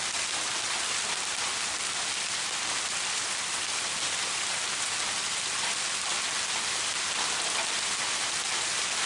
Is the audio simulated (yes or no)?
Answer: no